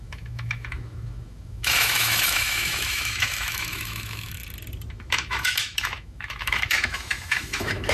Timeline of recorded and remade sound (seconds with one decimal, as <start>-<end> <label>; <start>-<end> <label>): 0.0-4.4 remade; 4.4-4.9 recorded; 4.9-7.9 remade